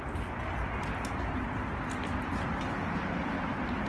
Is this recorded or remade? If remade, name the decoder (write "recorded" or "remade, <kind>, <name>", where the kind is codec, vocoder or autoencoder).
recorded